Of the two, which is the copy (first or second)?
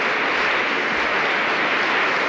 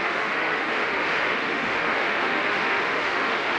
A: second